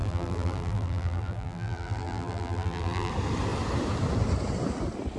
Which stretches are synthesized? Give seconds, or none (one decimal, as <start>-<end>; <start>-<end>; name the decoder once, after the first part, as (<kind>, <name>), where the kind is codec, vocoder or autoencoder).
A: 0.0-3.1 (vocoder, BigVGAN v2)